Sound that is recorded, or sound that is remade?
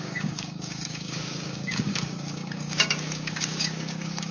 remade